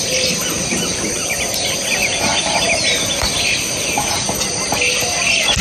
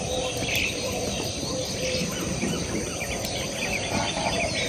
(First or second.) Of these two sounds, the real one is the first